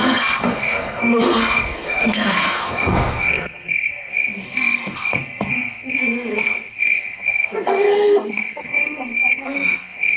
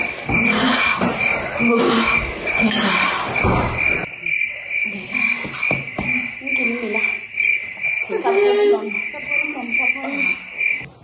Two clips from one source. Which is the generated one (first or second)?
first